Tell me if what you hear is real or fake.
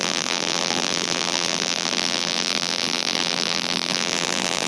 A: fake